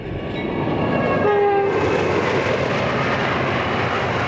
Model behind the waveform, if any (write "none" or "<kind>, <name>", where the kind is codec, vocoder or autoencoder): none